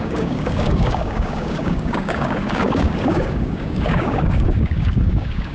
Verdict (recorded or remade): remade